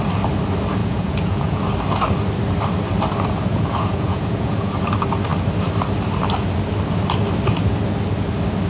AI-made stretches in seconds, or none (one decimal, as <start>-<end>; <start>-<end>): 0.8-1.6; 3.5-4.7